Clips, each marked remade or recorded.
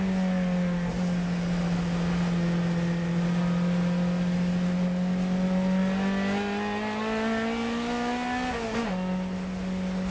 recorded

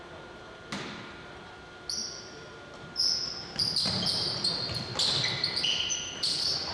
recorded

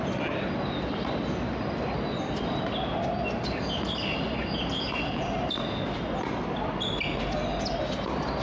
recorded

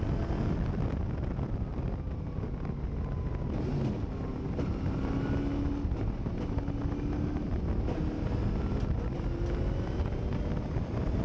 recorded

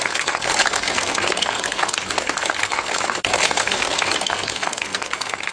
remade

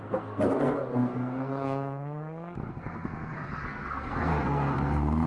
remade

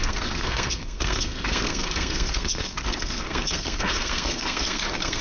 remade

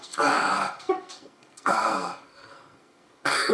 remade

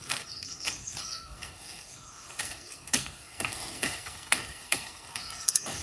remade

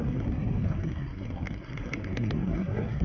remade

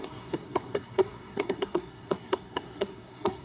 remade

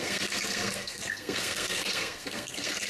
remade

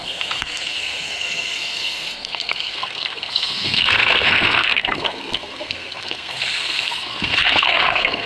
remade